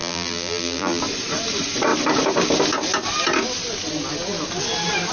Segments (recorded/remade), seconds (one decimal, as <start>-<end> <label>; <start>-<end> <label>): 0.0-1.0 remade; 1.0-5.1 recorded